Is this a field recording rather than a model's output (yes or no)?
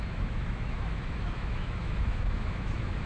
no